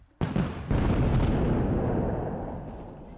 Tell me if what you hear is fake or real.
real